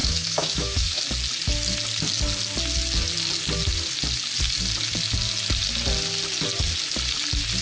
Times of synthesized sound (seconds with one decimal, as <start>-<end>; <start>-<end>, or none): 0.0-1.0